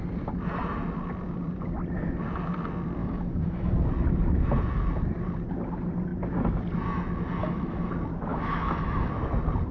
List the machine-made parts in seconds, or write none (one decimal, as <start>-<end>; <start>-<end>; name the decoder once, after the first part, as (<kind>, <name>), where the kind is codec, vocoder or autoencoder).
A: 3.0-3.7 (autoencoder, DAC-VAE); 7.4-7.9; 8.3-9.1